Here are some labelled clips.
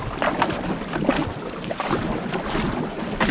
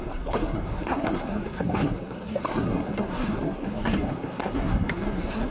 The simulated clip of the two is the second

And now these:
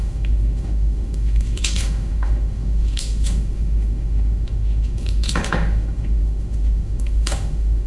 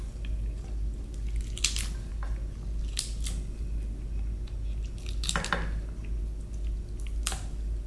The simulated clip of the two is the first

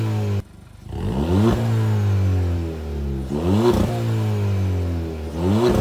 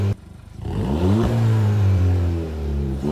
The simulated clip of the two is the second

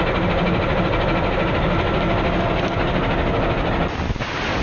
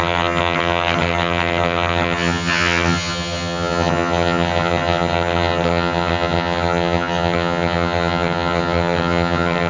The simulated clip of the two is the second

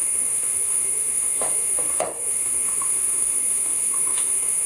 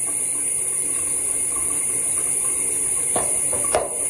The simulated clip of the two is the first